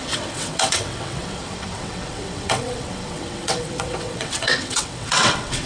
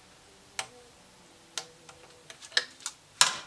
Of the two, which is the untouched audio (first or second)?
second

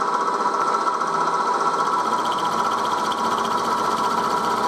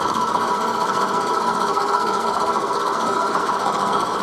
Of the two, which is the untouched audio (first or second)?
first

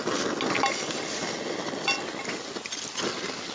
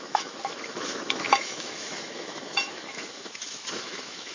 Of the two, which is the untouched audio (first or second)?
first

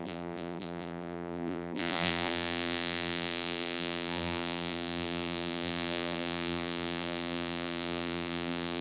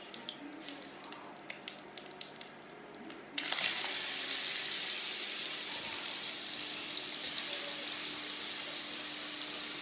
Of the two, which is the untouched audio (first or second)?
second